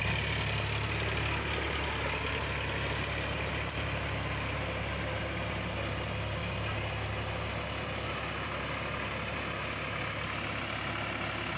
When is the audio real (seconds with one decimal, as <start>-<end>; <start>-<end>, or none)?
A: 0.0-11.6